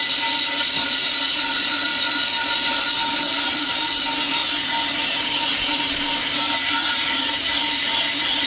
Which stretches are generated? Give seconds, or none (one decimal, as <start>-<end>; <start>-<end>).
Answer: 0.0-1.9; 2.4-4.4; 5.0-8.5